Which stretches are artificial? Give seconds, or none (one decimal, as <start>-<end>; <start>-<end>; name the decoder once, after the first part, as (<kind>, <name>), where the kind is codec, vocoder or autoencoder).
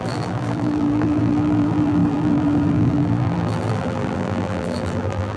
0.0-5.4 (vocoder, BigVGAN v2)